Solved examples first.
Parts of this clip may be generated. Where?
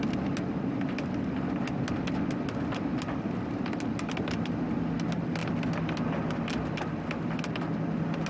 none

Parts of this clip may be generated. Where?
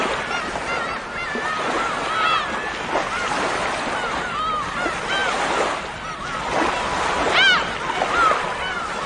none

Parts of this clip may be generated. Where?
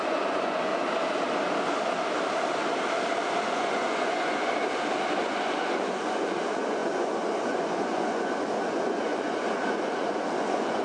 0.0-0.7 (vocoder, Vocos); 3.5-4.5; 5.2-10.8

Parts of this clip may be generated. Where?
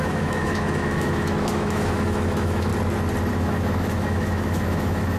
0.0-2.7 (autoencoder, DAC-VAE); 3.3-5.2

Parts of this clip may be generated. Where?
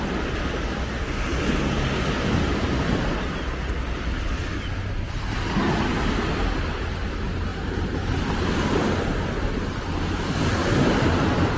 none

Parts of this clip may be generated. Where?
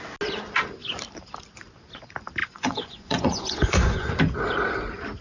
2.4-4.1 (vocoder, Vocos)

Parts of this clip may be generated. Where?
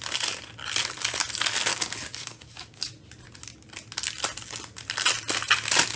1.7-2.9 (codec, DAC)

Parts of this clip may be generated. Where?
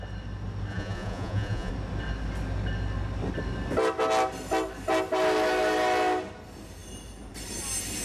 0.7-1.7 (vocoder, Vocos)